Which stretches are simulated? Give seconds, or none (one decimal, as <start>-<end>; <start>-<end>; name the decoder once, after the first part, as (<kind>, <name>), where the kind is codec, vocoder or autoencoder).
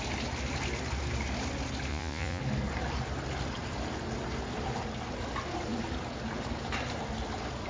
1.9-2.4 (vocoder, Vocos)